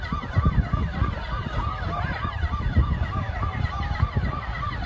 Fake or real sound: real